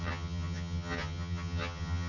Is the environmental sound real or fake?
fake